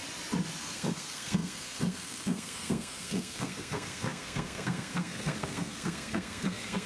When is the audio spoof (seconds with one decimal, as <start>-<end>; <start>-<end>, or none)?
0.6-6.9